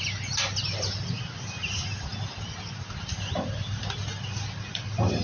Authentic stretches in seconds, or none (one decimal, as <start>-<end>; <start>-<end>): 0.0-5.2